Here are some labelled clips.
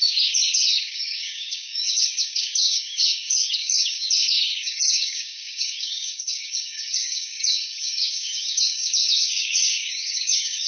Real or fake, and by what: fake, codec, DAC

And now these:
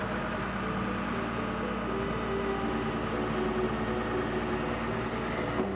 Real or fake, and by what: real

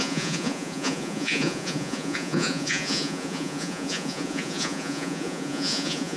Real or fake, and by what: fake, vocoder, Vocos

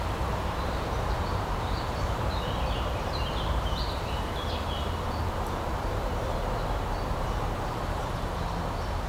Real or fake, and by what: fake, vocoder, BigVGAN v2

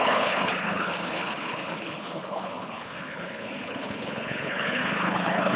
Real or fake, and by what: fake, codec, HILCodec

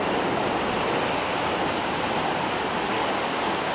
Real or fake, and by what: real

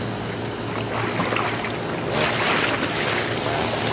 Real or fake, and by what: real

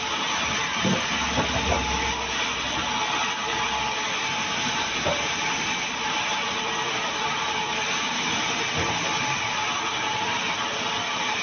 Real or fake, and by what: fake, vocoder, BigVGAN v2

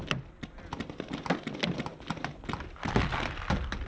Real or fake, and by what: real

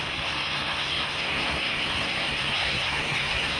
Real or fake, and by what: fake, codec, SNAC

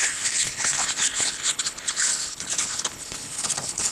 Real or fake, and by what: fake, codec, HILCodec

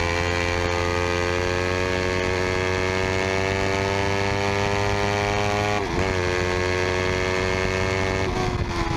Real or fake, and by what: real